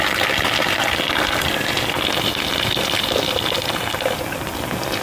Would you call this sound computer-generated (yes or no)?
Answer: no